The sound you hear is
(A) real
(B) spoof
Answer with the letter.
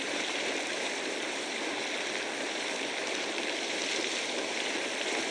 B